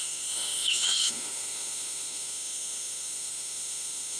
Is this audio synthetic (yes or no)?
yes